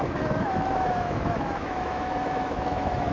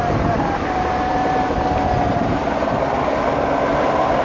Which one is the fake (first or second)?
first